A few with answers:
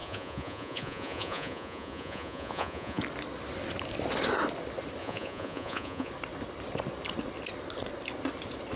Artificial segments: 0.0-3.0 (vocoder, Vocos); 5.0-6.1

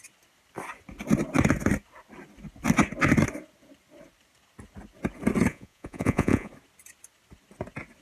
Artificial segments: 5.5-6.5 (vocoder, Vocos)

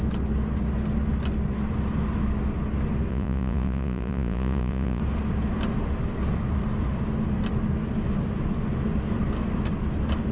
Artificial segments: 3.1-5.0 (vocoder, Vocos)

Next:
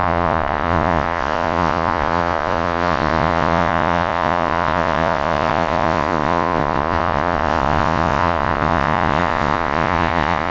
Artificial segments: 0.0-10.5 (vocoder, Vocos)

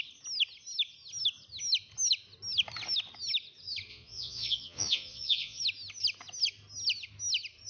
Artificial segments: 3.9-5.6 (vocoder, Vocos)

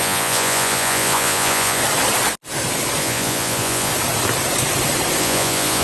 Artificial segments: 0.0-1.8 (vocoder, Vocos); 3.0-3.9; 5.2-5.8

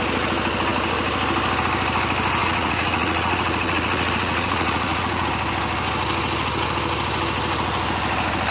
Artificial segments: 2.4-5.3 (vocoder, Vocos)

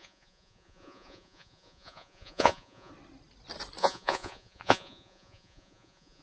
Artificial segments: 0.0-2.9 (vocoder, Vocos); 3.8-6.2